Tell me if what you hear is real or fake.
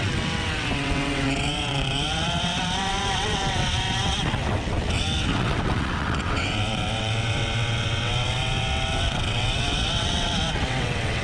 fake